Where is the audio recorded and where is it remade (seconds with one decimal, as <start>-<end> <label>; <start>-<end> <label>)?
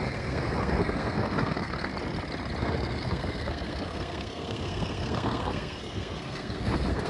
0.0-1.9 remade; 1.9-2.6 recorded; 2.6-7.1 remade